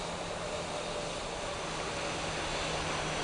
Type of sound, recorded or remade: recorded